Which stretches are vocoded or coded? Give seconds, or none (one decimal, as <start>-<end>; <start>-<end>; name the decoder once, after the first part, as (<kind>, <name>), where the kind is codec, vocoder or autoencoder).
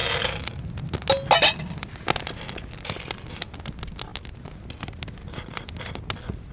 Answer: none